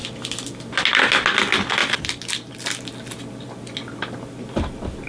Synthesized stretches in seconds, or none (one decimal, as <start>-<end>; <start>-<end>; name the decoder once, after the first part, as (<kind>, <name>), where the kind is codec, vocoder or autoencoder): none